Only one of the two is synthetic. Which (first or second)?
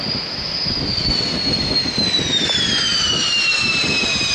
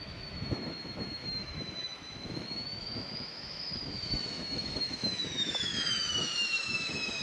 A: second